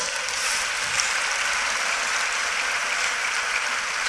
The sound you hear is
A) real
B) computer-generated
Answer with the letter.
A